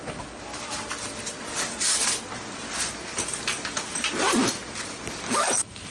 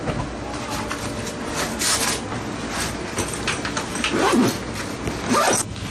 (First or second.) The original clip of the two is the second